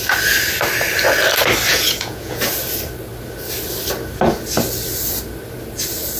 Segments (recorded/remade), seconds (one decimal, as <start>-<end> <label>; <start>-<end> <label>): 0.0-1.7 recorded; 1.7-2.5 remade; 2.5-6.2 recorded